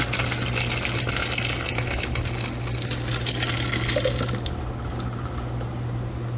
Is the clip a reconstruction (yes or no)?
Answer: no